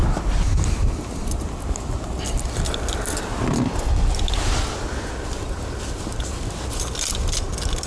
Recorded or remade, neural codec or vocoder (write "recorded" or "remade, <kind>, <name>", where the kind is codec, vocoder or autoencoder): recorded